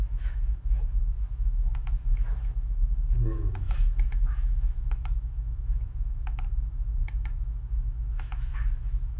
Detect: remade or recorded remade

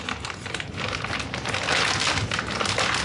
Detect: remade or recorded recorded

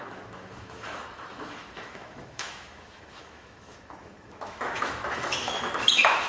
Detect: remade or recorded remade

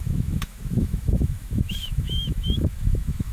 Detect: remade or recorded remade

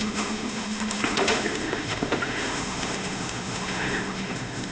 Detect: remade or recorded remade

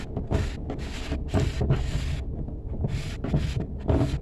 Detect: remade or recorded recorded